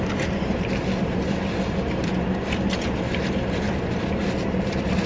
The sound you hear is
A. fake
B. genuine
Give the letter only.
B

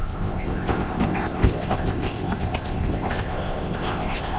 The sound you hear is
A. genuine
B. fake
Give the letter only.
B